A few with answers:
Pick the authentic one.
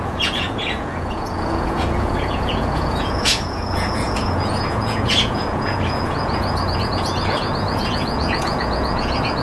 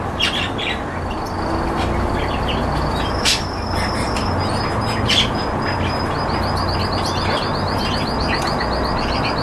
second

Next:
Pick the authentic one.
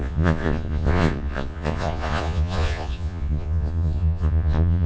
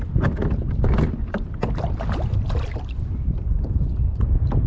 second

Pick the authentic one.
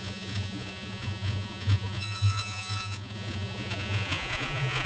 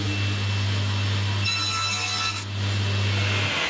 second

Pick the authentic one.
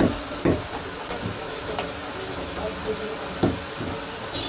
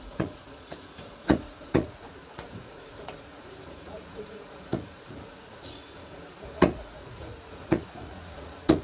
first